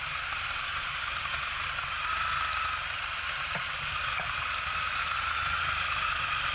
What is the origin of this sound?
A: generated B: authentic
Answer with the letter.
B